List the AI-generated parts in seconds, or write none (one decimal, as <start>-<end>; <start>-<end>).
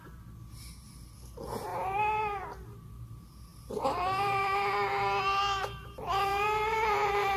1.7-2.4; 3.5-4.4; 6.3-7.4